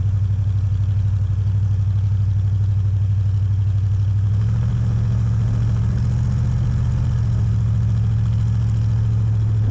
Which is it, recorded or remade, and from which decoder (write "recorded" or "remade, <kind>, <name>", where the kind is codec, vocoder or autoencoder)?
recorded